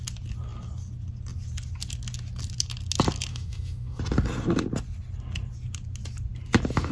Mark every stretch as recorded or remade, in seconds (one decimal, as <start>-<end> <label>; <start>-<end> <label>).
0.0-3.3 recorded; 3.3-4.0 remade; 4.0-6.9 recorded